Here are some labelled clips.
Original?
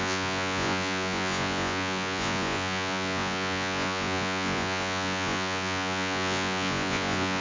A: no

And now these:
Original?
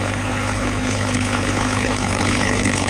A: no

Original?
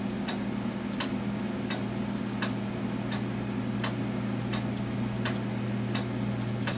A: yes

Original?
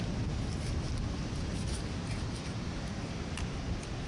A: yes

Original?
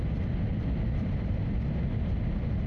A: yes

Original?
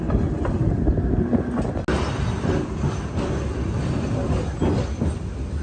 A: yes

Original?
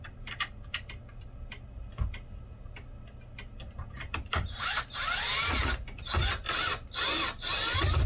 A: yes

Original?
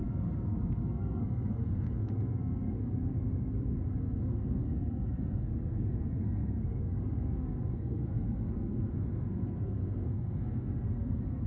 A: no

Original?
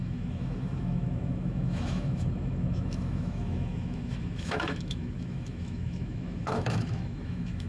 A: no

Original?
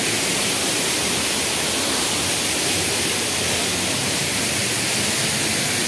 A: yes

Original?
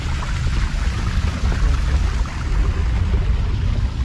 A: yes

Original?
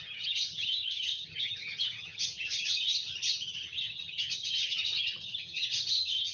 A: no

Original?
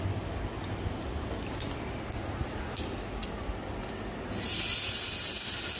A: yes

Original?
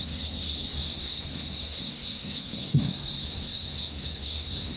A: no